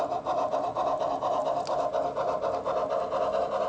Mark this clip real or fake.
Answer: real